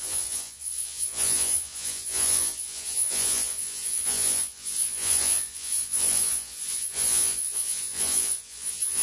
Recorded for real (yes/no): no